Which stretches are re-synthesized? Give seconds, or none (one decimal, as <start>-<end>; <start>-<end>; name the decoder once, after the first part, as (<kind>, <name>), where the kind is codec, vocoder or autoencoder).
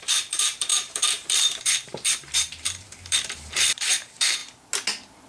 0.0-4.4 (vocoder, BigVGAN v2)